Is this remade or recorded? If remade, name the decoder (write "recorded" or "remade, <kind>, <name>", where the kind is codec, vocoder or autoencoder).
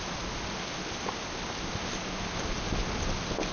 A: recorded